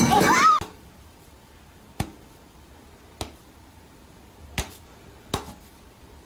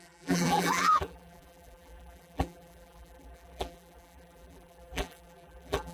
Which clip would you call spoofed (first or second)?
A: second